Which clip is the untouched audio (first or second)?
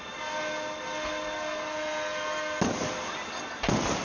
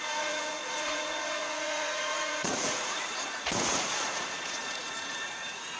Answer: first